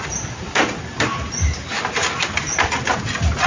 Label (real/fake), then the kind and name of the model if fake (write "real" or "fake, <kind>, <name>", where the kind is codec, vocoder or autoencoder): real